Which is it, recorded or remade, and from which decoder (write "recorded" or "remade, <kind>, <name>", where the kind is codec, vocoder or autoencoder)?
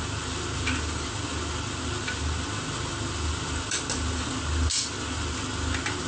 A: recorded